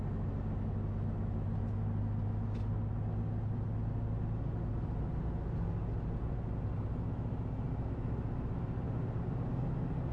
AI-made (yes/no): no